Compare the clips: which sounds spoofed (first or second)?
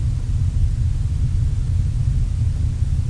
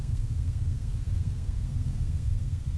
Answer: second